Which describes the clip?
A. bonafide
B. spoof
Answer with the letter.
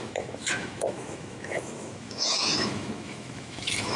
B